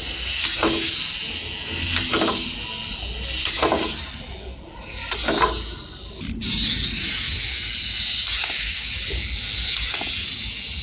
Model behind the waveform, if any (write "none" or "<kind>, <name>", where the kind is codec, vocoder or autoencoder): none